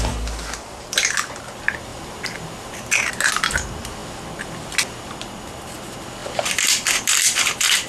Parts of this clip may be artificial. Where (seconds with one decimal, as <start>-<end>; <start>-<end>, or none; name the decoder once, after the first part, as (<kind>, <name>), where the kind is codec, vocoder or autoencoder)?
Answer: none